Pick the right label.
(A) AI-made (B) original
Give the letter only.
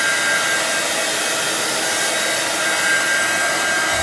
B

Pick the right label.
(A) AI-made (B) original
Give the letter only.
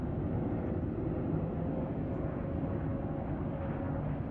B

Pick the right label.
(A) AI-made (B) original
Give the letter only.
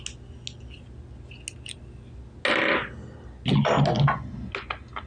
B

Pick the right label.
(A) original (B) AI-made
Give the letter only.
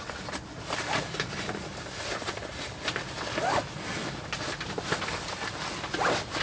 A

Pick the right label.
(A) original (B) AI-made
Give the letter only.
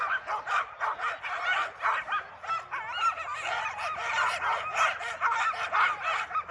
A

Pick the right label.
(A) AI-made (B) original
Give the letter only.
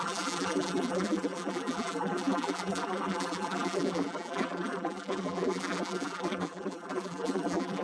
A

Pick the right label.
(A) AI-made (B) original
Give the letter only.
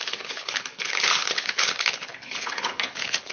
A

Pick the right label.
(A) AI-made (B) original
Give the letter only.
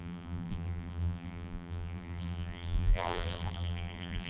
A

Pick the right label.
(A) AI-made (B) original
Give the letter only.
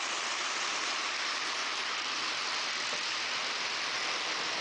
B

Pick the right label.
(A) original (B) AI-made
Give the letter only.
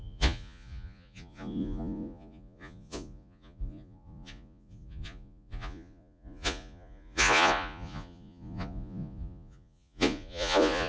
B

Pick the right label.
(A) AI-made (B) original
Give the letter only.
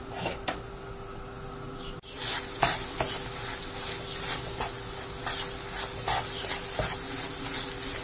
B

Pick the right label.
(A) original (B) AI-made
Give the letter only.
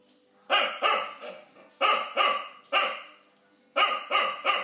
A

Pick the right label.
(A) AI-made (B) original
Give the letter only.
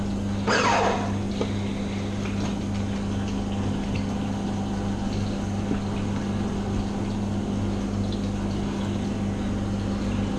B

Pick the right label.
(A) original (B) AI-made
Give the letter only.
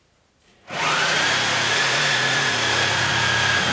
B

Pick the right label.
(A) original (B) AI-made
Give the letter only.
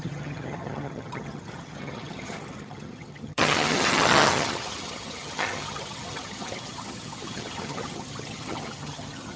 B